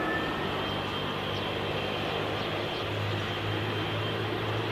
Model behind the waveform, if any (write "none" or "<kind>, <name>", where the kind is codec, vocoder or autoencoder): none